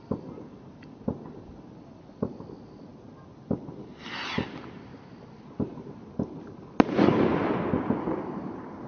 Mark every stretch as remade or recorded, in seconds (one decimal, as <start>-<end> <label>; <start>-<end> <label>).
0.0-8.9 recorded